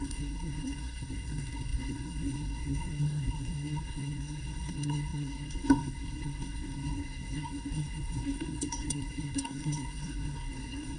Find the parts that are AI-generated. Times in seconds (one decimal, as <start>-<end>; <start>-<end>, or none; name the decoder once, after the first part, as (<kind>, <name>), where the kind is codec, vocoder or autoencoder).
0.0-11.0 (codec, SNAC)